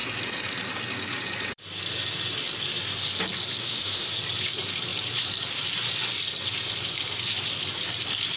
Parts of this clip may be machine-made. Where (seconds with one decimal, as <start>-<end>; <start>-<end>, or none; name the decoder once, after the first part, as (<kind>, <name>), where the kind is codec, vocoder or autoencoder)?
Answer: 3.6-4.2 (autoencoder, DAC-VAE)